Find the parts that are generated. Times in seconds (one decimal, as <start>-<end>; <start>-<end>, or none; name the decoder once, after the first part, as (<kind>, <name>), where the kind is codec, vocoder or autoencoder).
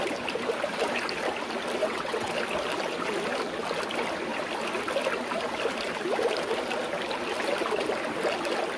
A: 1.8-2.3 (vocoder, WaveNeXt)